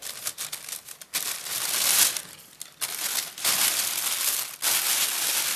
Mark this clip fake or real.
real